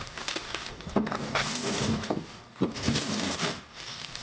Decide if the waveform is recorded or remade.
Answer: remade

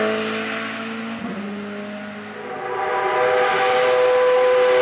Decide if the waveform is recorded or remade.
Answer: recorded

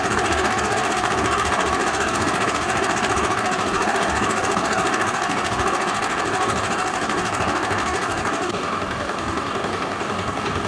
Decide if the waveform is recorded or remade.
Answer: remade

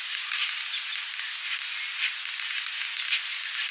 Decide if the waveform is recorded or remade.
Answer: recorded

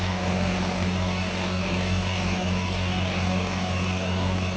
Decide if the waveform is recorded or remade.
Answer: remade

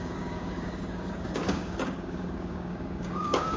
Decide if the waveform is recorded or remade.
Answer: remade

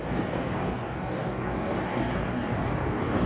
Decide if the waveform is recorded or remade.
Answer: remade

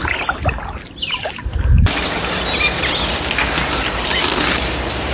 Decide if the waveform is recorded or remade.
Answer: recorded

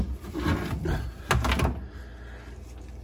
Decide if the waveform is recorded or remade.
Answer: recorded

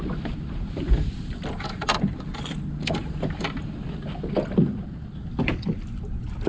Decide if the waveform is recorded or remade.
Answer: recorded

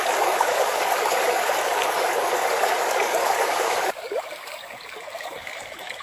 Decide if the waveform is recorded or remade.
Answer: remade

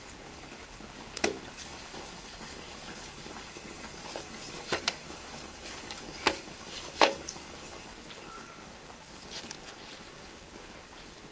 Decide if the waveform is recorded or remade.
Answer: remade